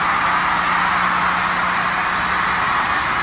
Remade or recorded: recorded